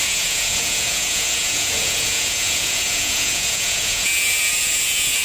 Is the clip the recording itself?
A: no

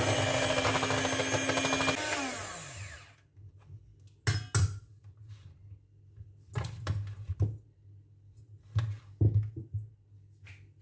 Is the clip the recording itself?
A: yes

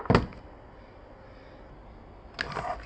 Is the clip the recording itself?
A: yes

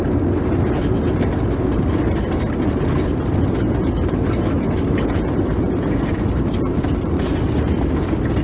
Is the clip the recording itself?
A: yes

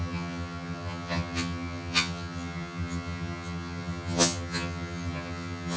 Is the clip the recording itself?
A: no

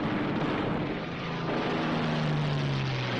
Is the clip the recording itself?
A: yes